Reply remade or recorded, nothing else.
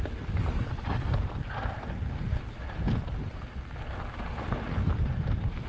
recorded